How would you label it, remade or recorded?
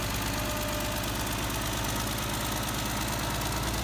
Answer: recorded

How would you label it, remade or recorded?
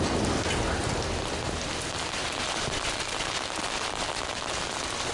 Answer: recorded